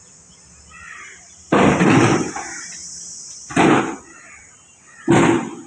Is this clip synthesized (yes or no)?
no